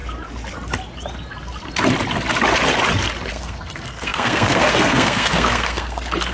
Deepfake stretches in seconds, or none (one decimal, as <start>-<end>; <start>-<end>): 3.3-6.3